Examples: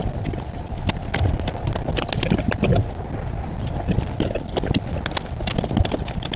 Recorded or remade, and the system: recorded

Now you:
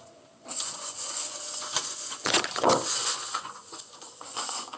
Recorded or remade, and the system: remade, vocoder, Vocos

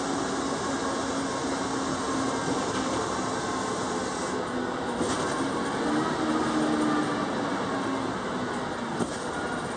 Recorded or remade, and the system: recorded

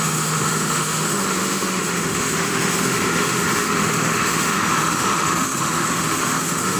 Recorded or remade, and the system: remade, autoencoder, DAC-VAE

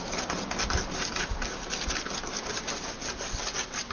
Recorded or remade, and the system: recorded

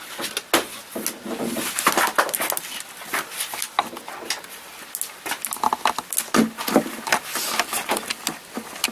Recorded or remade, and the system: recorded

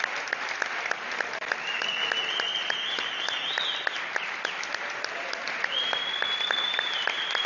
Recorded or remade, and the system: recorded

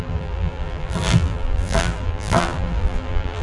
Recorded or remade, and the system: remade, vocoder, BigVGAN v2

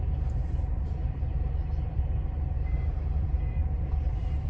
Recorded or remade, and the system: remade, vocoder, BigVGAN v2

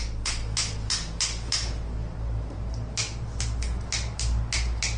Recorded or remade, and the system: recorded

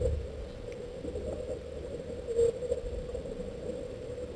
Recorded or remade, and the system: recorded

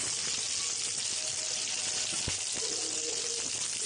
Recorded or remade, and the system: recorded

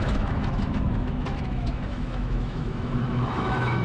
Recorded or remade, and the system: remade, autoencoder, DAC-VAE